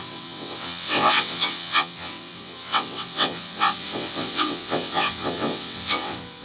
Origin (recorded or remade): remade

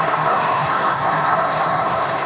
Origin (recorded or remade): remade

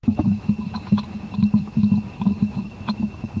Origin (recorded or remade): remade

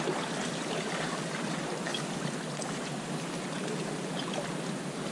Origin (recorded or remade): recorded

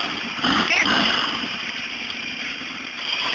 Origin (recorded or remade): remade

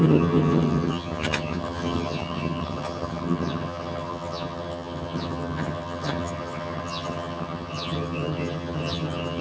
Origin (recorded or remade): remade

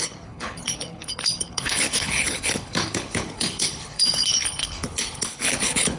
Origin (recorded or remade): remade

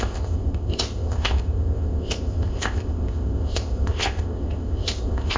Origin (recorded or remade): remade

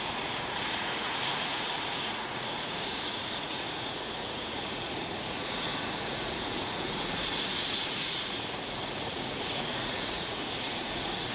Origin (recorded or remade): remade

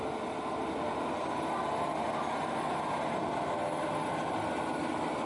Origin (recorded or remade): recorded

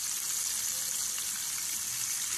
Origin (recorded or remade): recorded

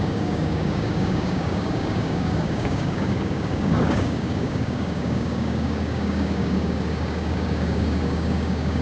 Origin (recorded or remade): remade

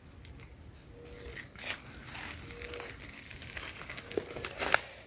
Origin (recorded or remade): recorded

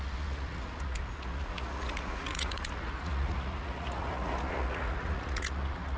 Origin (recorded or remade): remade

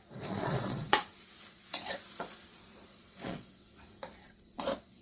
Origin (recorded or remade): remade